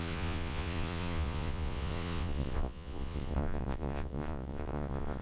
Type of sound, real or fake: fake